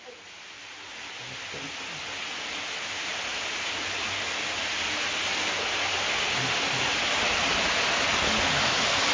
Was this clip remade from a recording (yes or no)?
no